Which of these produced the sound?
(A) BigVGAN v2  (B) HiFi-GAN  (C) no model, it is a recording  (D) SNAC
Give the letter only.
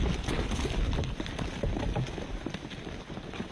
C